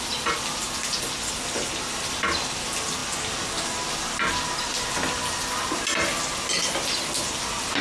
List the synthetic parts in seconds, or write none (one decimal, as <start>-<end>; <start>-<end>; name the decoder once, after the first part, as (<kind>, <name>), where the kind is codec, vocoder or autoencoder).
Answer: none